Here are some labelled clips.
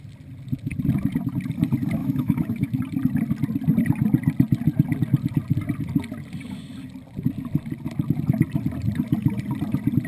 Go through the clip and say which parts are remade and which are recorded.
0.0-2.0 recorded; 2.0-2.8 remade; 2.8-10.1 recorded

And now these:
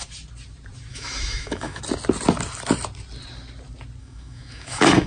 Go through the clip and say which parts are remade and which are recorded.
0.0-0.9 recorded; 0.9-1.8 remade; 1.8-4.0 recorded; 4.0-5.1 remade

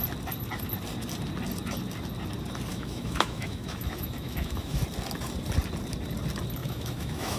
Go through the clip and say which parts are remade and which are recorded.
0.0-2.7 recorded; 2.7-4.8 remade; 4.8-6.6 recorded; 6.6-7.4 remade

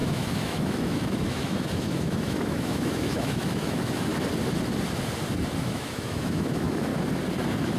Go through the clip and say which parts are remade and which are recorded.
0.0-4.1 remade; 4.1-5.6 recorded; 5.6-6.9 remade; 6.9-7.8 recorded

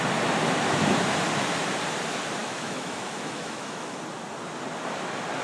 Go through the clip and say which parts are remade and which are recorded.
0.0-2.4 recorded; 2.4-4.0 remade; 4.0-5.4 recorded

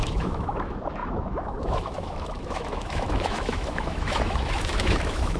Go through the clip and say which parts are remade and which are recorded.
0.0-5.4 remade

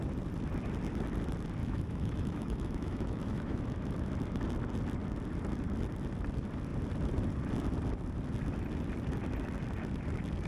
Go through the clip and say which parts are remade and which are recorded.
0.0-1.6 recorded; 1.6-4.1 remade; 4.1-10.5 recorded